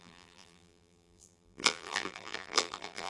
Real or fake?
fake